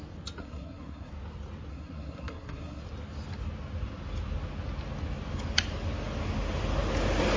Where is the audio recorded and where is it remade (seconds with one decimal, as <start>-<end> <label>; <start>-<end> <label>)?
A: 0.0-0.4 recorded; 0.4-1.1 remade; 1.1-1.7 recorded; 1.7-2.8 remade; 2.8-7.4 recorded